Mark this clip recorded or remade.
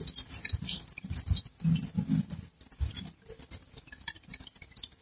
recorded